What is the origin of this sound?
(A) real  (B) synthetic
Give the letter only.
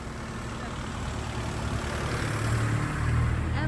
A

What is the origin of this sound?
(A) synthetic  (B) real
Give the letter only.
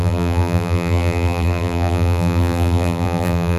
A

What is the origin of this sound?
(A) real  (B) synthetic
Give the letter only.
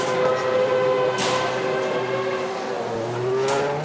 A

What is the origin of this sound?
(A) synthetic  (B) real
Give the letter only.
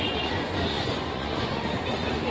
A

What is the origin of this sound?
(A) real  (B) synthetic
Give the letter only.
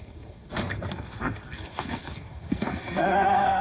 B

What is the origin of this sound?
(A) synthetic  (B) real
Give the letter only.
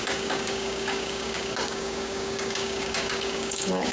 A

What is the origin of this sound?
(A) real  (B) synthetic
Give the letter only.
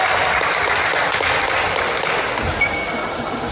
A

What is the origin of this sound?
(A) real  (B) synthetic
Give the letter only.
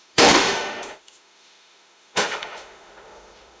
B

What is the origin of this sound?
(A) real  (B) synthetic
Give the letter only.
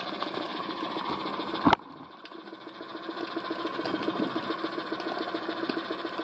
A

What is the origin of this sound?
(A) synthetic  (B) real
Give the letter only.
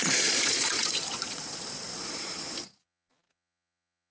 A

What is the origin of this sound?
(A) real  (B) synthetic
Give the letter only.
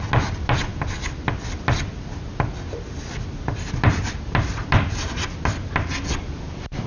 A